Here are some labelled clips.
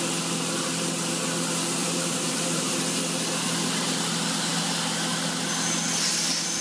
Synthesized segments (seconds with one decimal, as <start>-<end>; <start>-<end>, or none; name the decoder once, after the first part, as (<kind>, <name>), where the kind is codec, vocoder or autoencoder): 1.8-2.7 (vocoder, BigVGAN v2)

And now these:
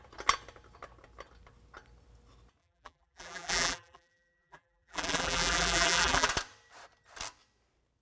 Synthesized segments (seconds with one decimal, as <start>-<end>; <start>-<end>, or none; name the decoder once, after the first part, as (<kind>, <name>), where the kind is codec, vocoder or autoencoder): 2.6-6.3 (vocoder, BigVGAN v2)

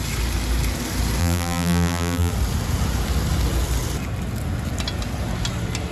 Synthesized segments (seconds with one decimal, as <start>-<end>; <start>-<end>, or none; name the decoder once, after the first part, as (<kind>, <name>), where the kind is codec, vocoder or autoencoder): 1.2-2.3 (vocoder, BigVGAN v2)

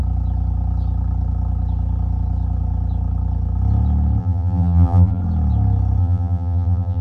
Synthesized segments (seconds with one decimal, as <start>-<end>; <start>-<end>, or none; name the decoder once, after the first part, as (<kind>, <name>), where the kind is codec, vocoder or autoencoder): 4.2-5.2 (vocoder, BigVGAN v2); 6.0-7.0

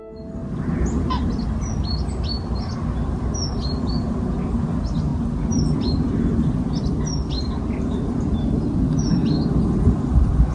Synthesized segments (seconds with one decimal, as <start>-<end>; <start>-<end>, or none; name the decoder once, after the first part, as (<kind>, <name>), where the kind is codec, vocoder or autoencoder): 0.4-1.3 (vocoder, BigVGAN v2)